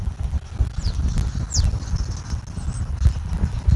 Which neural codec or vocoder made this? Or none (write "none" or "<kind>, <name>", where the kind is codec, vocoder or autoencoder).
none